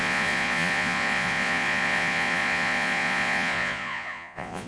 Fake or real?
fake